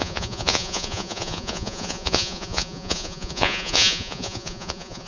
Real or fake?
fake